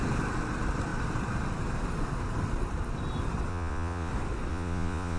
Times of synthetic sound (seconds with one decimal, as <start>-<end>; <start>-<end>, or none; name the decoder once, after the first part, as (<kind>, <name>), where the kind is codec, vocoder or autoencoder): 3.5-4.1 (vocoder, Vocos); 4.5-5.2